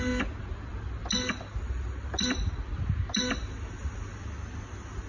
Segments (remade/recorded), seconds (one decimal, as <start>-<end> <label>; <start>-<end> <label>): 0.0-5.1 recorded